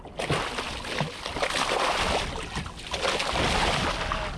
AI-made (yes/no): no